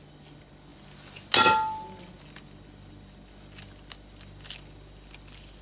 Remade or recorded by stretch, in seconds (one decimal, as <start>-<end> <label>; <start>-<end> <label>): 0.0-5.6 recorded